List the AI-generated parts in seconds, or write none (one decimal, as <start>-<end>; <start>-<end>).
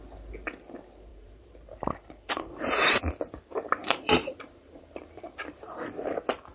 1.1-3.0; 3.8-5.8